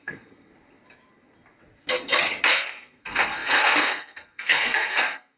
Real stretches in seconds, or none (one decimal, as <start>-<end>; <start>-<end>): 0.5-2.5